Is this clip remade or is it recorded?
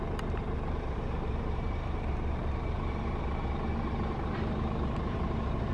remade